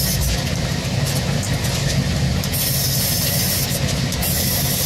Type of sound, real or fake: real